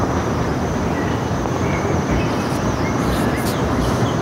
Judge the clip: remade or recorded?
recorded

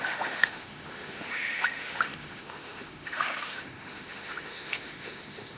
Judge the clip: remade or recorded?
remade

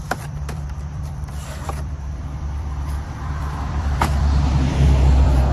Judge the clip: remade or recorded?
remade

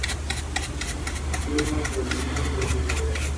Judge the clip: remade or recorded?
recorded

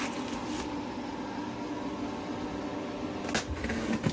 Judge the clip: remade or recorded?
recorded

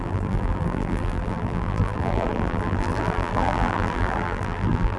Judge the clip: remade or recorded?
remade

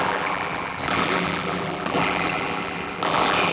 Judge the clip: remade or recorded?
remade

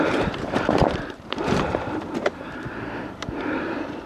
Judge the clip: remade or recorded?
remade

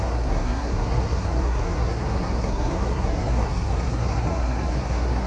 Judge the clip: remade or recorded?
remade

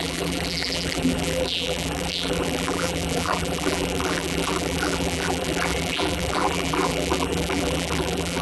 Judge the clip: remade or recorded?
remade